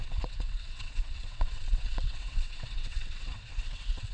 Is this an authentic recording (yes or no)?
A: no